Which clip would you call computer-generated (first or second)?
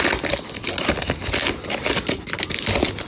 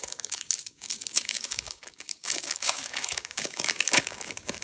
second